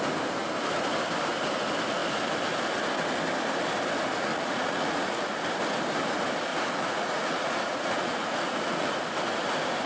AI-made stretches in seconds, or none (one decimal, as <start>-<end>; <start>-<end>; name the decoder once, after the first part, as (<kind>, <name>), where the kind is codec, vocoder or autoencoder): 4.3-5.3 (vocoder, Vocos); 6.5-9.0